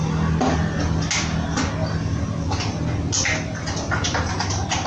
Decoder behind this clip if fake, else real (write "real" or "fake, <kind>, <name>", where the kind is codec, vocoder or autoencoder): real